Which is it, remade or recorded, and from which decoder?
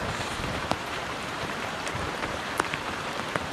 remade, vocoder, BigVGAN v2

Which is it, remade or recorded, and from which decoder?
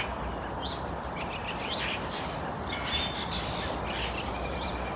remade, vocoder, BigVGAN v2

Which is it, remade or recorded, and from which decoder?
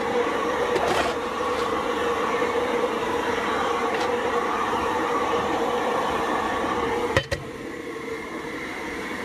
remade, vocoder, BigVGAN v2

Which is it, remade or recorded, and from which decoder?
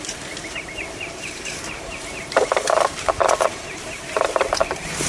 remade, vocoder, BigVGAN v2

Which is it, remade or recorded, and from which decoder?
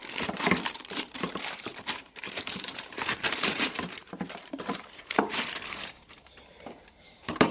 remade, vocoder, BigVGAN v2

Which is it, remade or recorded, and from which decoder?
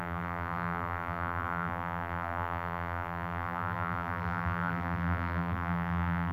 remade, vocoder, BigVGAN v2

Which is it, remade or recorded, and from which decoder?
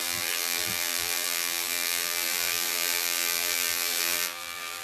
remade, vocoder, BigVGAN v2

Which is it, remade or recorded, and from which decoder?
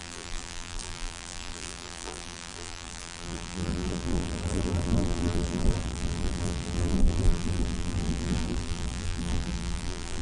remade, vocoder, BigVGAN v2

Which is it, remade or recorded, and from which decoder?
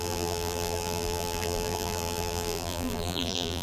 remade, vocoder, BigVGAN v2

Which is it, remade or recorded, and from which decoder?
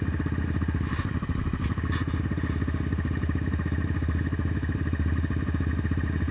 recorded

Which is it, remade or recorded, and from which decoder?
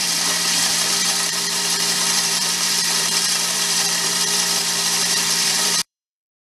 remade, vocoder, BigVGAN v2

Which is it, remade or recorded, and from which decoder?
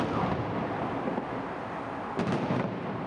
recorded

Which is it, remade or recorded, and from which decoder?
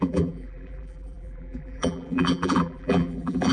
remade, vocoder, BigVGAN v2